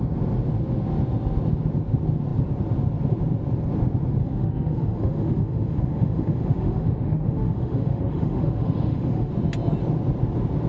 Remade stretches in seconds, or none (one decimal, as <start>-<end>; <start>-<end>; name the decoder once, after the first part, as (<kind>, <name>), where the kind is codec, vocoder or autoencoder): 4.2-9.3 (autoencoder, DAC-VAE)